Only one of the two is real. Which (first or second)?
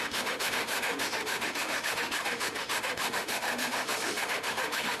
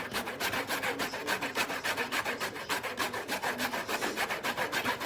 second